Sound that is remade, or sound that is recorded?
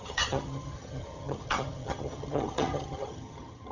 remade